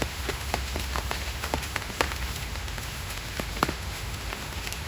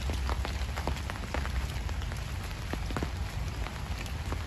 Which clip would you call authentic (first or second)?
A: second